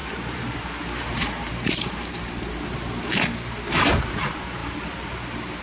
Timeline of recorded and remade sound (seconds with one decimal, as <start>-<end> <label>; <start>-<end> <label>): 0.0-5.6 remade